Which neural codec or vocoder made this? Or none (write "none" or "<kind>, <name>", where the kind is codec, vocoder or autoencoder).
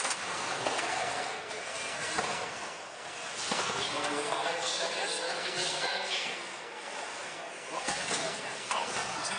codec, SNAC